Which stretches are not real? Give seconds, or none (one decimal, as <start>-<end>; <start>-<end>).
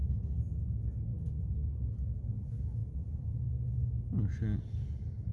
1.1-1.8; 2.8-3.3